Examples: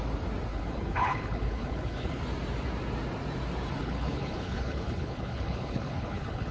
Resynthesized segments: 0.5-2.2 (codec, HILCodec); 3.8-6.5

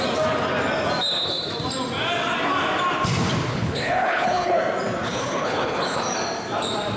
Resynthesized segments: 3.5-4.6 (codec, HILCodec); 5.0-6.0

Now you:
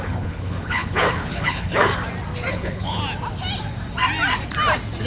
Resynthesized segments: 0.0-1.9 (codec, HILCodec); 2.5-3.0